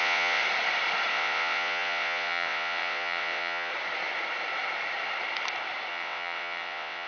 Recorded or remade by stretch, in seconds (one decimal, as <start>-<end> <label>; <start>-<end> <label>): 0.0-0.4 remade; 0.4-1.1 recorded; 1.1-3.7 remade; 3.7-5.9 recorded; 5.9-7.1 remade